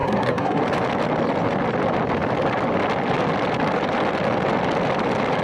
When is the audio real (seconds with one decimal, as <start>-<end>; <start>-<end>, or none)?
0.6-5.4